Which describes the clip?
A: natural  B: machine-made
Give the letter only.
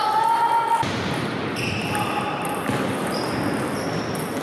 A